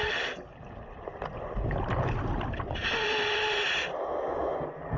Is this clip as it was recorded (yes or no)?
yes